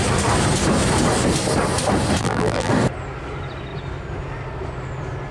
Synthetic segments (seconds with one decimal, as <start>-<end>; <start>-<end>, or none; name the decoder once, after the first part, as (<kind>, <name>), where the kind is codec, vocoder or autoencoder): 2.2-2.7 (vocoder, BigVGAN v2)